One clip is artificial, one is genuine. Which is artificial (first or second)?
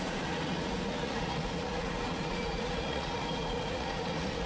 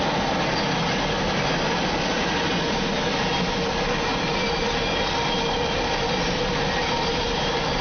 first